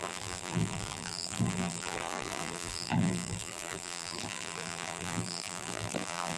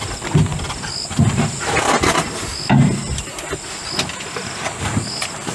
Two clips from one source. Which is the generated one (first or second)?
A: first